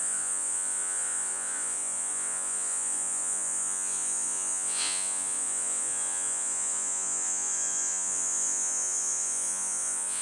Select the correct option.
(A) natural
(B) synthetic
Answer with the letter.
B